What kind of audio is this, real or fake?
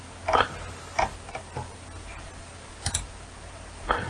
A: real